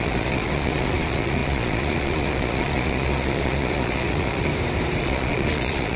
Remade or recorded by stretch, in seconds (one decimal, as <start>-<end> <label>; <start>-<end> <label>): 0.0-4.5 remade; 4.5-5.0 recorded; 5.0-6.0 remade